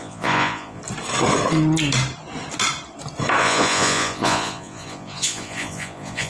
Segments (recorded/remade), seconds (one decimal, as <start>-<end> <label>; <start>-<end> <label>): 0.0-0.8 remade; 0.8-3.4 recorded; 3.4-6.3 remade